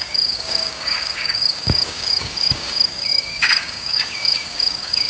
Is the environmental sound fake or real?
fake